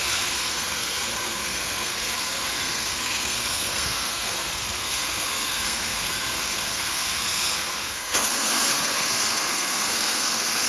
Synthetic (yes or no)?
yes